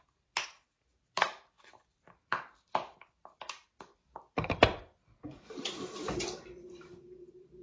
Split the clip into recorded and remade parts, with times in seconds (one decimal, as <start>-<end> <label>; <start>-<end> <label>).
0.0-7.6 recorded